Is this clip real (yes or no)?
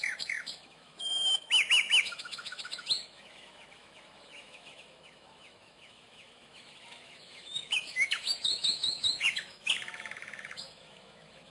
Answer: no